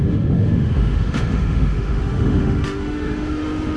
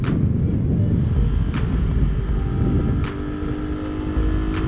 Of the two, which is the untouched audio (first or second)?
second